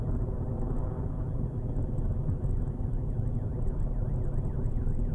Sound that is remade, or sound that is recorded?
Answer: recorded